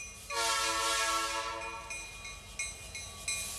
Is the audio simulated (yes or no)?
no